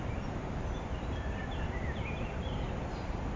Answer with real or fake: real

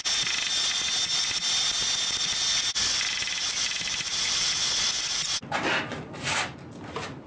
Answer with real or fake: real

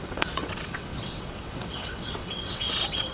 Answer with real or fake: fake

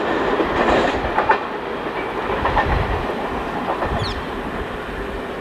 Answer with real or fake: real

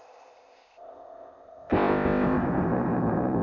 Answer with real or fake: fake